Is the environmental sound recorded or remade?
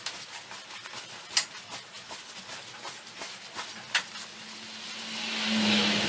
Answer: recorded